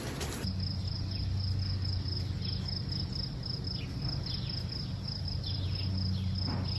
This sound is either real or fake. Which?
real